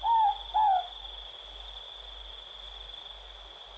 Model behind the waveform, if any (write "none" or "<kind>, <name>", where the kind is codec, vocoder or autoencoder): none